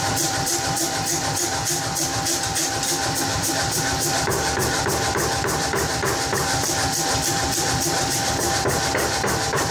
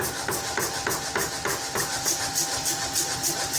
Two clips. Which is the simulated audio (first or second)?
first